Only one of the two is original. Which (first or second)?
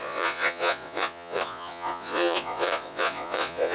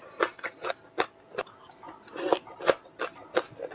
second